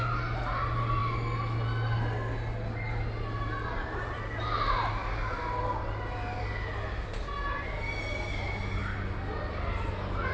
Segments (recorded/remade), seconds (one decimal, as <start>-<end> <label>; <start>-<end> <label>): 0.0-10.3 recorded